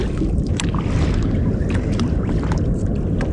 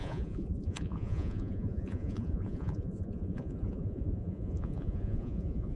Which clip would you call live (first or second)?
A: first